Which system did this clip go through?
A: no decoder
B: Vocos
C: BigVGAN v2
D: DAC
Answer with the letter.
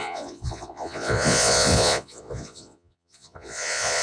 B